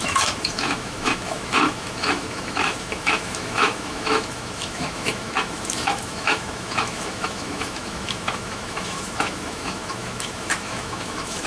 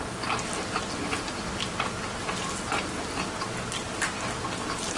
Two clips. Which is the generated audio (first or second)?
first